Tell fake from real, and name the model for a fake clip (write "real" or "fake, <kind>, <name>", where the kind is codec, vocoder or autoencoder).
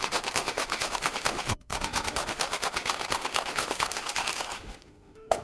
fake, autoencoder, DAC-VAE